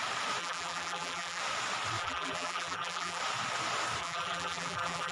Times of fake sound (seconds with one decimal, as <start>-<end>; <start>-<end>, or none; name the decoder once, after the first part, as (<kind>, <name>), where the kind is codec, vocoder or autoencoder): 0.4-1.4 (vocoder, BigVGAN v2); 2.0-3.2; 4.0-5.1